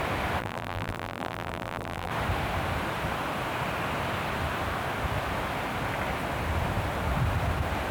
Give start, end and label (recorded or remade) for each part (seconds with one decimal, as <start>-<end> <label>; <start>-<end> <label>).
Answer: 0.0-0.4 recorded; 0.4-2.1 remade; 2.1-7.9 recorded